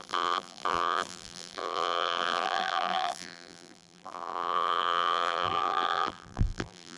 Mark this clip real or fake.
fake